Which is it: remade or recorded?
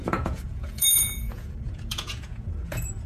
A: remade